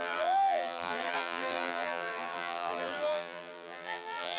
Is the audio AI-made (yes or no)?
yes